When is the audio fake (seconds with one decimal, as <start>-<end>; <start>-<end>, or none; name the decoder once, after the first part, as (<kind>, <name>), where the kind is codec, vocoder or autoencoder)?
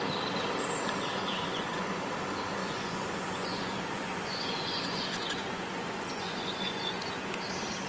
1.3-2.0 (vocoder, Vocos); 2.6-7.3